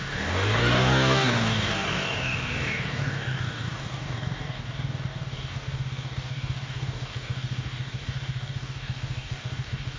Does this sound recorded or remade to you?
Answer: remade